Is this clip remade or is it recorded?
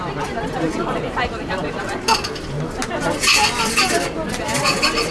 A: recorded